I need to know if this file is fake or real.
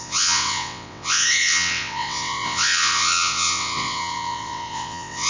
fake